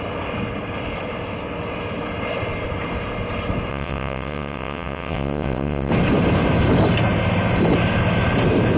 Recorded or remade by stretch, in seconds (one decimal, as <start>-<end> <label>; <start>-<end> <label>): 0.0-3.7 recorded; 3.7-5.9 remade; 5.9-8.8 recorded